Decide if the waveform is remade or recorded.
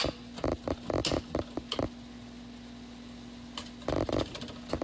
recorded